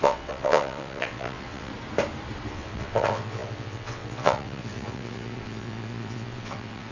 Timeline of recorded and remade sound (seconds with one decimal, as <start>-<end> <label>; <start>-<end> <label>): 0.0-1.7 remade; 1.7-2.5 recorded; 2.5-6.9 remade